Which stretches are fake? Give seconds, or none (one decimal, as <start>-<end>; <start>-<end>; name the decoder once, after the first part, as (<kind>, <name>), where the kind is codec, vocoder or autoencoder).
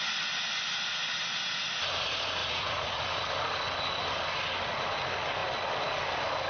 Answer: 2.4-3.0 (vocoder, Vocos)